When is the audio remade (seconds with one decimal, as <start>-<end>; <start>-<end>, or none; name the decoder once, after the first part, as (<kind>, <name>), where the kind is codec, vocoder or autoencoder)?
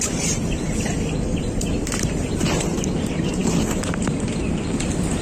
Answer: none